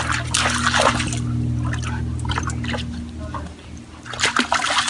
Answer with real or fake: real